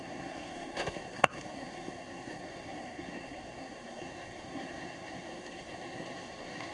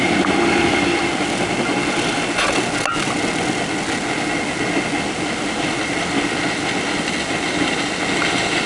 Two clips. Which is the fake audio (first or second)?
first